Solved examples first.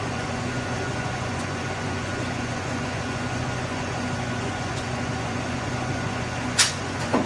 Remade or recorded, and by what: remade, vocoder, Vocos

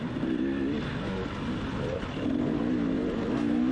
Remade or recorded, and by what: recorded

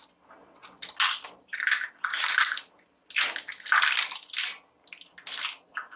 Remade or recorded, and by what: recorded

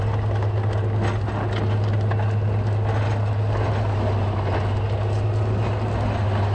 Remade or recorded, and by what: recorded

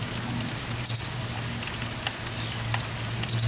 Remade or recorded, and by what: recorded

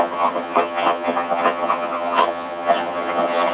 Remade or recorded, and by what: remade, vocoder, HiFi-GAN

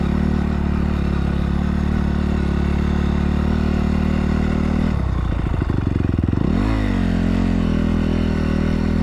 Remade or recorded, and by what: recorded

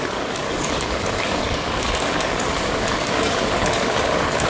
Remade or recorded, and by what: remade, codec, DAC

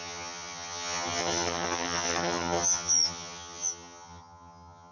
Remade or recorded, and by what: remade, vocoder, HiFi-GAN